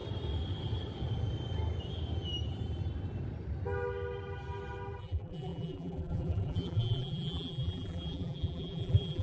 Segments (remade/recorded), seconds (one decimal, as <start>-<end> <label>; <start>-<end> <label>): 0.0-5.0 recorded; 5.0-9.2 remade